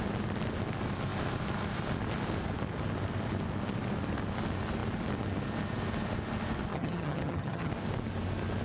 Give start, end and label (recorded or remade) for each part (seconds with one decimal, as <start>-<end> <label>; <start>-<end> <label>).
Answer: 0.0-6.7 recorded; 6.7-7.7 remade; 7.7-8.6 recorded